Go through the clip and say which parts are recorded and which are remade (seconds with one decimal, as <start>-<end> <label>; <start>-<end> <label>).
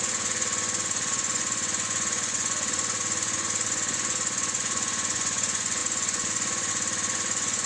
0.0-7.7 remade